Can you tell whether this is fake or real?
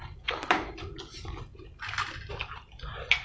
real